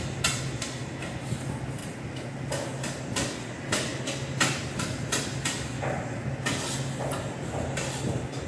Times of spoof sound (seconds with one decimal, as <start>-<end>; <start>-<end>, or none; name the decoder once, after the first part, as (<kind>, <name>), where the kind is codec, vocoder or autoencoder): none